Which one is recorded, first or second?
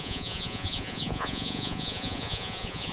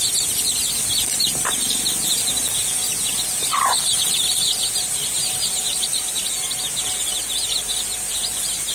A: second